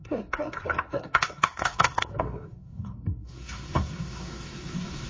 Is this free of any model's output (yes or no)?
no